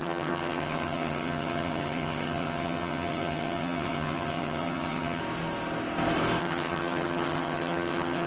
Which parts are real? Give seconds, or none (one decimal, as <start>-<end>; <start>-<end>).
5.2-6.4